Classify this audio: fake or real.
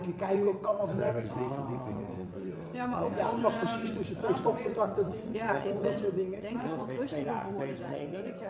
fake